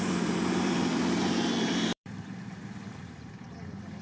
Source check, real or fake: fake